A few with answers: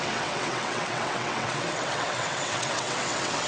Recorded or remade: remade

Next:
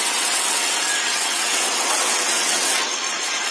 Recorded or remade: remade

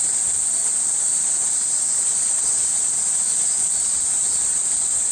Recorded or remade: recorded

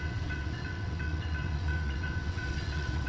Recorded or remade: remade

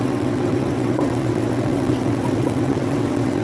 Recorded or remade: remade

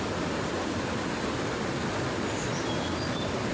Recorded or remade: recorded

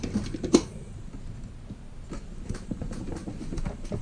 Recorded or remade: recorded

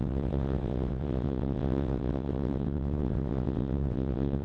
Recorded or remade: remade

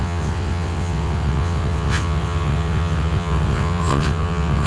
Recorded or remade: remade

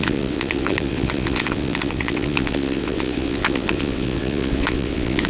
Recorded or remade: remade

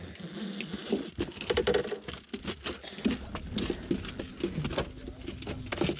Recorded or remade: recorded